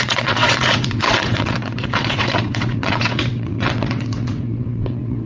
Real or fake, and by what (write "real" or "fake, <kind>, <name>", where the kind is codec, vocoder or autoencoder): fake, vocoder, WaveNeXt